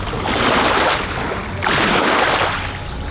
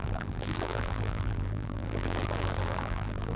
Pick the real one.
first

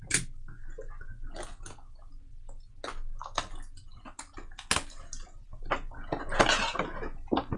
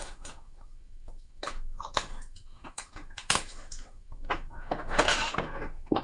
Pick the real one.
first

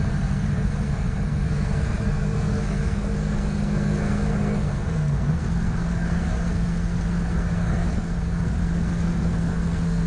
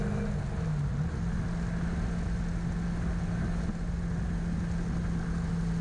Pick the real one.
second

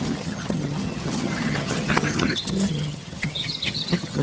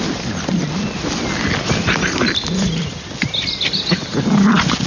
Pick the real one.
second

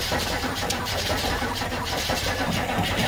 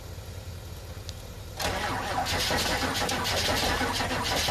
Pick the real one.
second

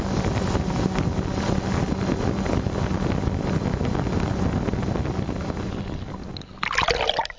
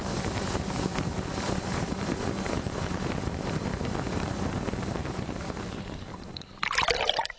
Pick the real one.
first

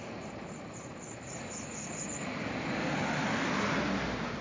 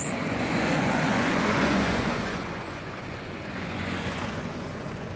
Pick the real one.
first